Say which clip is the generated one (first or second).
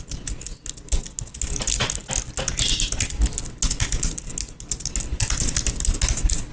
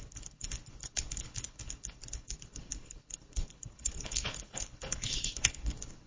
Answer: second